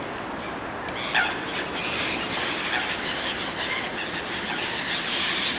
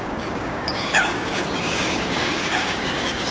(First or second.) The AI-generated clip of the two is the second